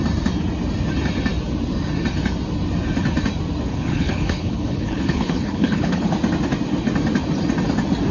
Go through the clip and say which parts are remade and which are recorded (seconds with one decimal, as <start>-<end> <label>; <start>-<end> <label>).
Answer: 0.0-3.7 recorded; 3.7-6.1 remade; 6.1-8.1 recorded